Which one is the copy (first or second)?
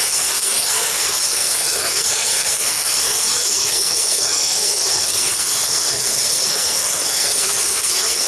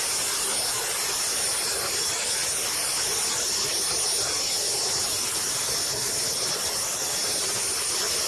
first